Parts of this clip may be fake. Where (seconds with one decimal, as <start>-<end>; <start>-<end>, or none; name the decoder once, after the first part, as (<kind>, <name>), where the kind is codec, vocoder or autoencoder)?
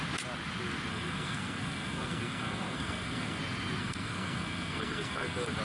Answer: 0.9-3.4 (codec, SNAC); 3.8-5.6